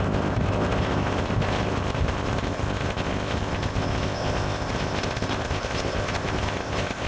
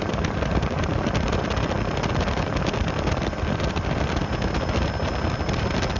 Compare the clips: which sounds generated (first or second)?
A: first